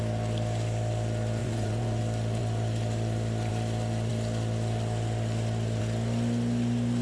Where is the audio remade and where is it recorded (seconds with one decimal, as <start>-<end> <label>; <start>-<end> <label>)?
0.0-1.4 recorded; 1.4-2.0 remade; 2.0-7.0 recorded